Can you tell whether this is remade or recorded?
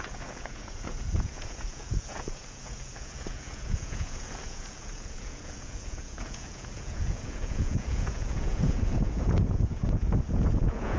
remade